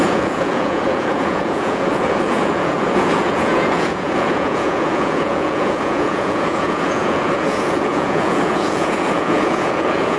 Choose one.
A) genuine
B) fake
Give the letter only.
B